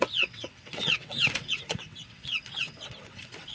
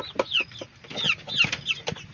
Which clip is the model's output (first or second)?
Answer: first